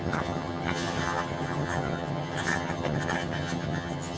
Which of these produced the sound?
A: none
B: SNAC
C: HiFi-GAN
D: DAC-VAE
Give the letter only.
C